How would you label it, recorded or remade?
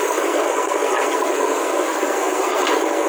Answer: remade